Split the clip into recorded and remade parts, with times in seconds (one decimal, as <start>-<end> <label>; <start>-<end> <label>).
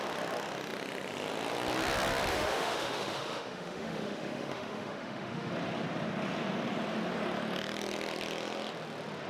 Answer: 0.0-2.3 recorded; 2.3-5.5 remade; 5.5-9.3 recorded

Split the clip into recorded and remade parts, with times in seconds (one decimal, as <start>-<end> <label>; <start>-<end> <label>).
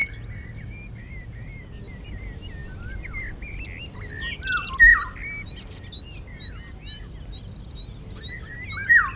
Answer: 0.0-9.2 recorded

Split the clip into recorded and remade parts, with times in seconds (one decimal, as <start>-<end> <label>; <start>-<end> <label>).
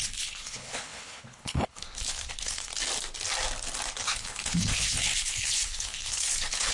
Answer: 0.0-2.7 remade; 2.7-4.0 recorded; 4.0-6.7 remade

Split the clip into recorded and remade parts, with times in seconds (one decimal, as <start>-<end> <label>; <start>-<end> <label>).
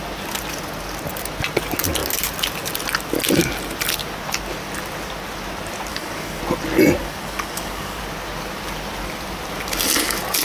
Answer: 0.0-5.9 recorded; 5.9-6.4 remade; 6.4-7.0 recorded; 7.0-8.0 remade; 8.0-10.4 recorded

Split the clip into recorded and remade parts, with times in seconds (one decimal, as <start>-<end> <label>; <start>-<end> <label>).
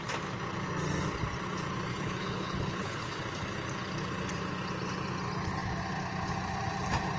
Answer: 0.0-1.9 recorded; 1.9-3.2 remade; 3.2-7.2 recorded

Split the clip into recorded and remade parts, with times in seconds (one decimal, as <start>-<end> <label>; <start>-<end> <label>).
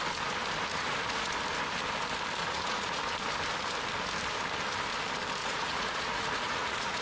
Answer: 0.0-0.7 recorded; 0.7-1.3 remade; 1.3-2.4 recorded; 2.4-3.0 remade; 3.0-5.4 recorded; 5.4-7.0 remade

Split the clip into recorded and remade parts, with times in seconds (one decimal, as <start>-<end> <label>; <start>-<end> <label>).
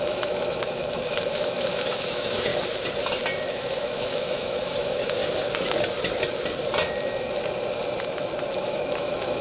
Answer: 0.0-2.5 remade; 2.5-3.5 recorded; 3.5-5.2 remade; 5.2-8.6 recorded; 8.6-9.4 remade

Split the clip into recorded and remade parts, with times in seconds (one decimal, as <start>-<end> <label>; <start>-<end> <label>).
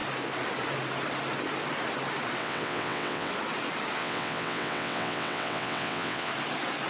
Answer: 0.0-2.4 recorded; 2.4-3.3 remade; 3.3-4.0 recorded; 4.0-6.3 remade; 6.3-6.9 recorded